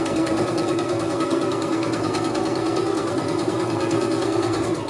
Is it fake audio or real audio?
fake